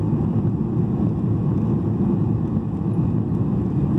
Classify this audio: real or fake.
real